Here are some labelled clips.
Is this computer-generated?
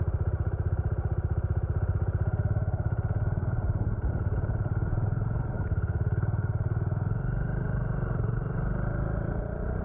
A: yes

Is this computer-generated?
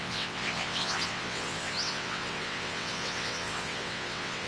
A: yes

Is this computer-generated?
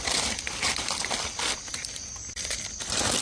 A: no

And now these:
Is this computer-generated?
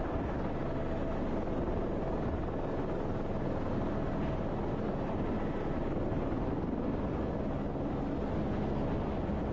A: no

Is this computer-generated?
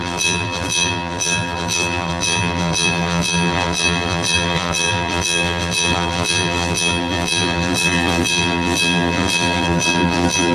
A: yes